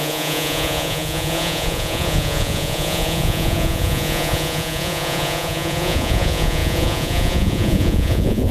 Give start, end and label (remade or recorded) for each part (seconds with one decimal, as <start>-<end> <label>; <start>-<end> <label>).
0.0-8.5 remade